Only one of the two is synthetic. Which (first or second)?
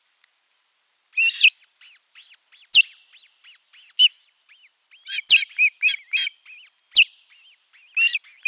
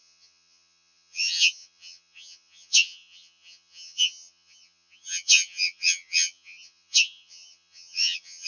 second